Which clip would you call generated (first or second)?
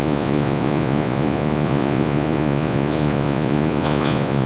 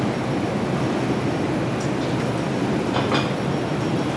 first